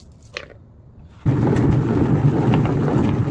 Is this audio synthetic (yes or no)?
no